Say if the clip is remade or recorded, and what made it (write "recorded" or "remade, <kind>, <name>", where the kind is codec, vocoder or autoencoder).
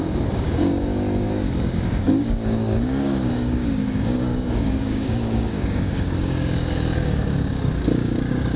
remade, codec, DAC